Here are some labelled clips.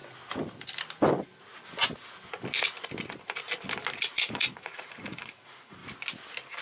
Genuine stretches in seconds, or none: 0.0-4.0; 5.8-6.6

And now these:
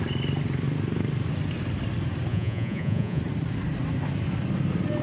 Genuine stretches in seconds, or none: 0.0-2.3; 3.2-5.0

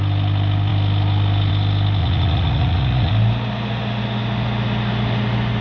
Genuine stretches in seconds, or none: 0.0-2.0; 3.1-5.6

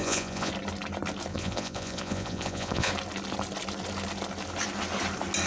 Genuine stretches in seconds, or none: 0.5-1.3; 2.9-5.5

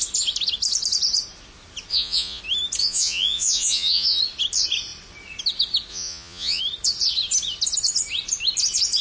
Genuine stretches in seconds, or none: 0.0-1.9; 2.4-2.8; 4.2-5.9; 6.6-9.0